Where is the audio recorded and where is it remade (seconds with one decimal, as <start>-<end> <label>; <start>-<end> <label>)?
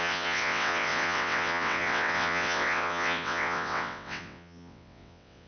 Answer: 0.0-5.5 remade